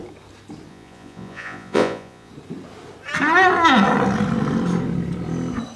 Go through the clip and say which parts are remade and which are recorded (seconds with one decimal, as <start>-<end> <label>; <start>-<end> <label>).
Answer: 0.0-0.7 recorded; 0.7-2.3 remade; 2.3-5.8 recorded